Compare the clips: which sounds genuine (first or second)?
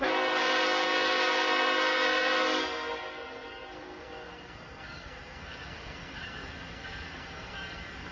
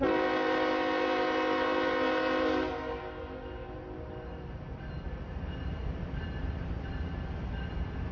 second